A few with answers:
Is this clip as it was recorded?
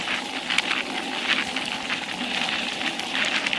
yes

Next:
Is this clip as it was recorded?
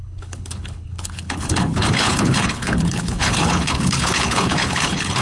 no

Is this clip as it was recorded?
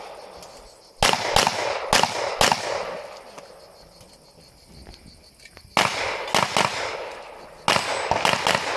yes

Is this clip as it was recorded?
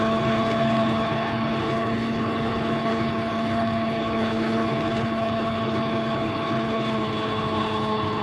no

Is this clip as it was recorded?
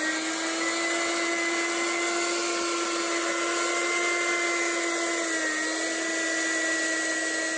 yes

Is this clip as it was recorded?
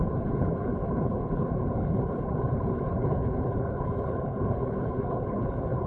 no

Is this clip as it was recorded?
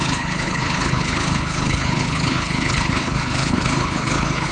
no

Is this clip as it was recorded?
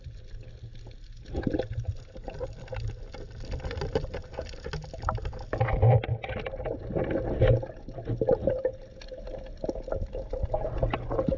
yes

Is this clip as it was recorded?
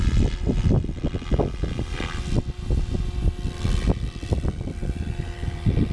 yes